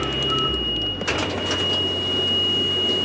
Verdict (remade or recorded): recorded